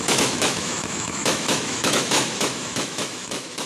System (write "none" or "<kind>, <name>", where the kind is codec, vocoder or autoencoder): autoencoder, DAC-VAE